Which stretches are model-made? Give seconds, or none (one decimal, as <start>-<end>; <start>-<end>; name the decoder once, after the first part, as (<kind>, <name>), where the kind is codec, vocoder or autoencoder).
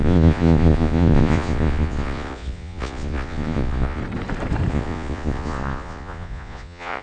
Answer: 0.0-4.0 (vocoder, Vocos); 4.7-7.0